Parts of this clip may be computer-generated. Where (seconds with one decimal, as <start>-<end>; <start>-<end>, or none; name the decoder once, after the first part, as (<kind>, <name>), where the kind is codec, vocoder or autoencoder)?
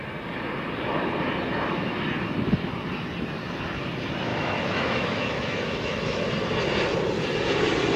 4.3-6.3 (autoencoder, DAC-VAE)